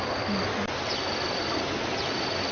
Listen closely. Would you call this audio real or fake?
real